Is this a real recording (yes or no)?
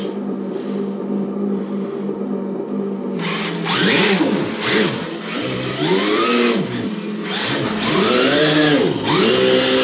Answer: yes